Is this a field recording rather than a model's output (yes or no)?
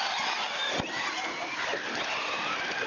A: yes